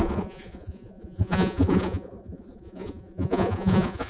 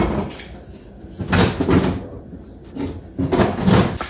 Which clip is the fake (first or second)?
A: first